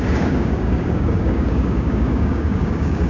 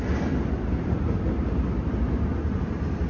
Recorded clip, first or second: second